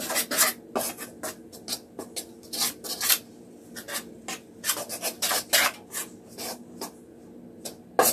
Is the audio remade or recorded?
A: recorded